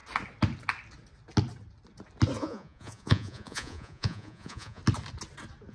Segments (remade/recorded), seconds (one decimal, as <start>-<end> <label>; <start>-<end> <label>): 0.0-2.4 recorded; 2.4-4.8 remade; 4.8-5.7 recorded